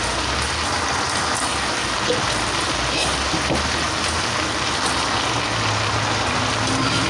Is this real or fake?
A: real